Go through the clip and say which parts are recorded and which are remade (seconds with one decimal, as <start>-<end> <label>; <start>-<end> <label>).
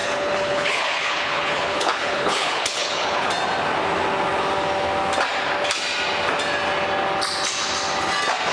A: 0.0-3.3 remade; 3.3-8.5 recorded